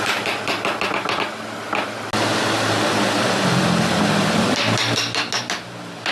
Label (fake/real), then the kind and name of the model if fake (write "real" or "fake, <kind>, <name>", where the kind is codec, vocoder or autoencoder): real